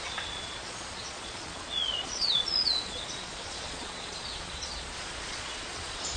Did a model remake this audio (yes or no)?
yes